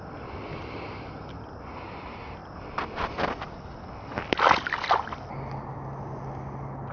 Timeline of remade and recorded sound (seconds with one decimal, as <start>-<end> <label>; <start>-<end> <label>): 0.0-2.4 recorded; 2.4-3.1 remade; 3.1-6.9 recorded

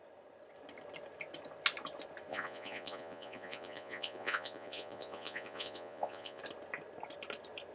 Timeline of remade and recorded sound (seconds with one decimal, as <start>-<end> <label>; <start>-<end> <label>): 0.0-2.3 recorded; 2.3-6.4 remade; 6.4-7.7 recorded